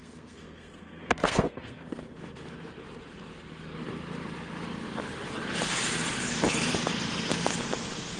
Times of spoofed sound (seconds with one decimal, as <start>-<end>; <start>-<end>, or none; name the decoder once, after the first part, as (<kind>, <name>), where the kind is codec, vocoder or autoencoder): 0.0-2.0 (codec, SNAC)